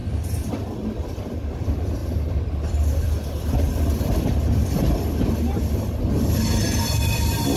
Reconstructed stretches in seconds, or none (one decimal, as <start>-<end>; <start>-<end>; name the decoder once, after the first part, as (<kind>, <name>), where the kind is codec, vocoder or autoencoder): 0.0-4.6 (vocoder, BigVGAN v2); 6.1-7.6